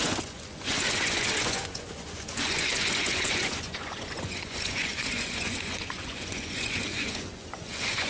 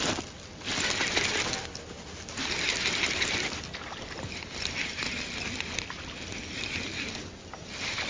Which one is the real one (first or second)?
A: second